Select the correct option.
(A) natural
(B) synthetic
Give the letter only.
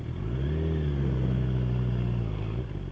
A